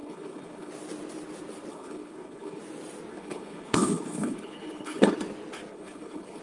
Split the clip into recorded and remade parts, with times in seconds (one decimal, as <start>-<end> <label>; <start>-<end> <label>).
0.0-0.7 remade; 0.7-1.7 recorded; 1.7-2.6 remade; 2.6-3.1 recorded; 3.1-5.1 remade; 5.1-5.7 recorded; 5.7-6.4 remade